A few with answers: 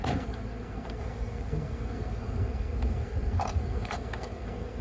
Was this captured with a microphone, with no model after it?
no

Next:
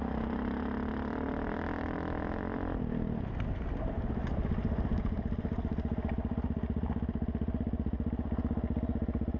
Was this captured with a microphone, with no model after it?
yes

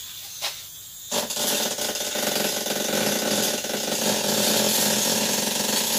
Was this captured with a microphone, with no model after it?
yes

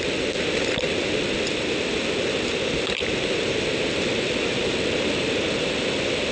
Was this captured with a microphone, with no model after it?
yes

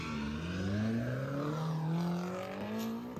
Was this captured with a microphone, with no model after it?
yes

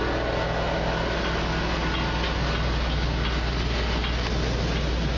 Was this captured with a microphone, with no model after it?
yes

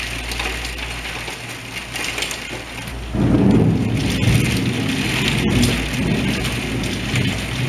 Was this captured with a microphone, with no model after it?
yes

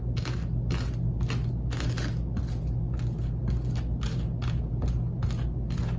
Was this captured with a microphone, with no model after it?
yes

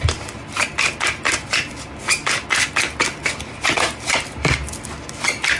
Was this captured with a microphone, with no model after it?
yes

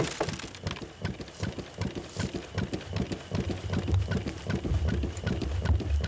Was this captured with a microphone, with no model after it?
yes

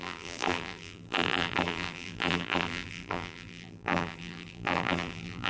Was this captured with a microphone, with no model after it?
no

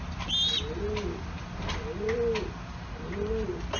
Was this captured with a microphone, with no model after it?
yes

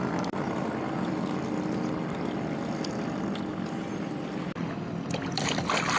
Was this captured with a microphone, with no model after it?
yes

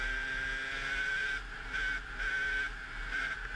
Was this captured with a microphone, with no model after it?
yes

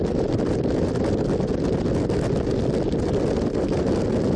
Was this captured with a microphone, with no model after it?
yes